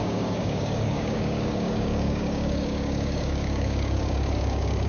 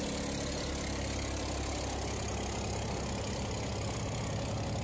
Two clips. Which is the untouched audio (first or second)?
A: second